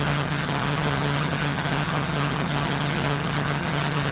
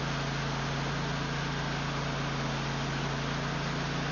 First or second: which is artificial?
first